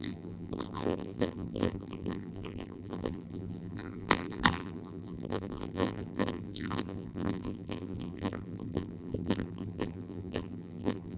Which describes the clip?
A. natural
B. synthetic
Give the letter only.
B